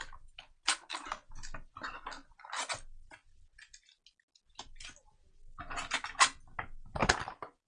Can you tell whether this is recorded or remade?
recorded